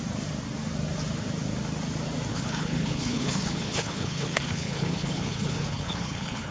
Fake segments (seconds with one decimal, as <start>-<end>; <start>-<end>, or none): 2.3-6.5